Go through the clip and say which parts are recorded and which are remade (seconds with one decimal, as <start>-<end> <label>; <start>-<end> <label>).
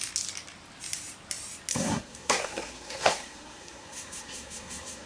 0.0-1.7 recorded; 1.7-5.1 remade